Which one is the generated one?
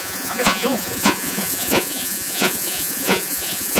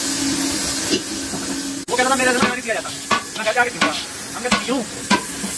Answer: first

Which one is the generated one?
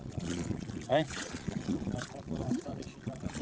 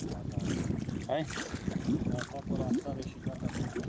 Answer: first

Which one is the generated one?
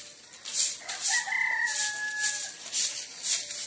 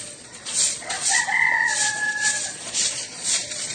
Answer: second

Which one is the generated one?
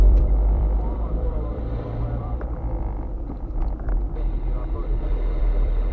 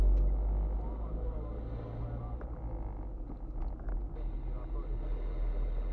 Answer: first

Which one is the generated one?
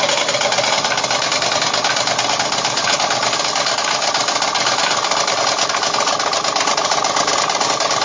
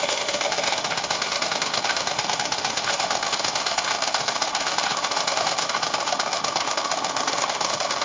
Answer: second